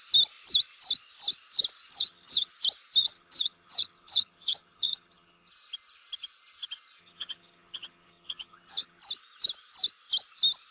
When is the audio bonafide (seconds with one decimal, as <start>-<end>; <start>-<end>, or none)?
0.0-1.9; 2.5-3.0; 5.5-7.0; 9.0-10.7